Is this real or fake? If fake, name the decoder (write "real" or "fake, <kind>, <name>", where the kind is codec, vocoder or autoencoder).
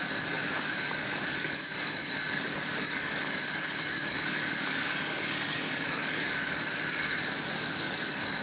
fake, codec, DAC